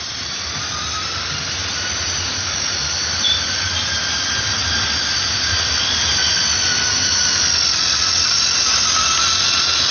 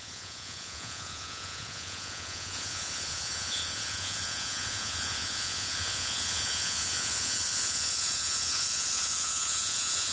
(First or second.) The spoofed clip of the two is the second